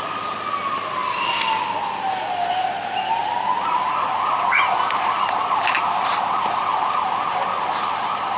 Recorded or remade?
recorded